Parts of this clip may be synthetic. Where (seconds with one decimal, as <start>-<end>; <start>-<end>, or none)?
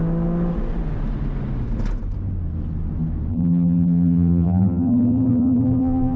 3.3-6.2